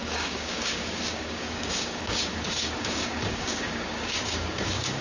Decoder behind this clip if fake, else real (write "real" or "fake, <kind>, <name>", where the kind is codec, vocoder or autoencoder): fake, codec, DAC